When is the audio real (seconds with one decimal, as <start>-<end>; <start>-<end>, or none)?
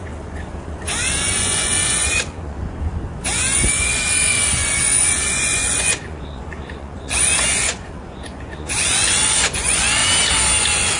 10.0-10.6